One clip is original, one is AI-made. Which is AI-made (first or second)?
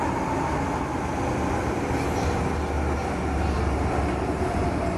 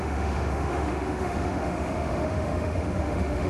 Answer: second